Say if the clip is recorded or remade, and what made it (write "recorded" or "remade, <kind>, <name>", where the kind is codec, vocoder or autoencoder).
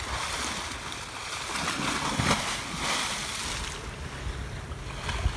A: recorded